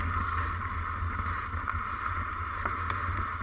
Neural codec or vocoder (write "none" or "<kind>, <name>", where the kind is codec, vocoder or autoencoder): none